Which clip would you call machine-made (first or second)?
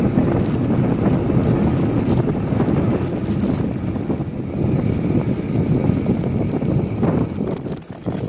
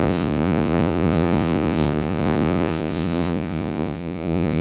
second